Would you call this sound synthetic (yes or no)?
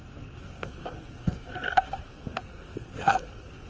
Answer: yes